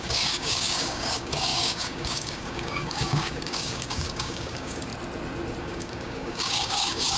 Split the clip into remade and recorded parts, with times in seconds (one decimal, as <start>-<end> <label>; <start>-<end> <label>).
0.0-4.9 remade; 4.9-5.6 recorded; 5.6-7.2 remade